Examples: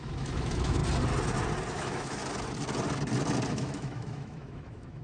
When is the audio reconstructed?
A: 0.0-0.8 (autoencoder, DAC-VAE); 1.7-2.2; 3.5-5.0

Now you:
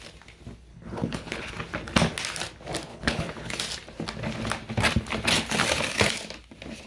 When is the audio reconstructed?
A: 0.7-1.5 (codec, HILCodec); 2.9-3.6

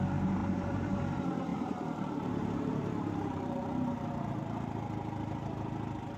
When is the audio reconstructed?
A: 0.4-1.0 (vocoder, BigVGAN v2); 1.5-4.4

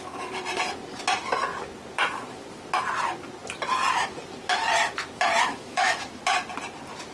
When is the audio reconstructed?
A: 5.5-6.2 (autoencoder, DAC-VAE)

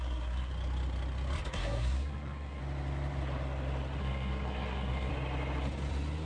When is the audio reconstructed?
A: 0.0-0.5 (codec, SNAC); 1.5-2.6; 4.0-5.1

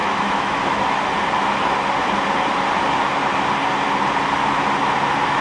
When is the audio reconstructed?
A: 0.0-0.8 (autoencoder, DAC-VAE)

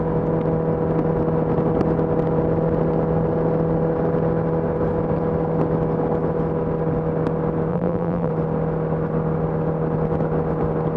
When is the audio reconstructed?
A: 7.7-8.3 (vocoder, BigVGAN v2)

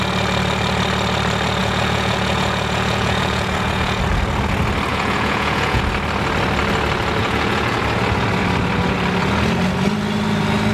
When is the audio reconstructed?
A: 1.6-4.0 (vocoder, Vocos); 4.9-5.8; 7.2-7.8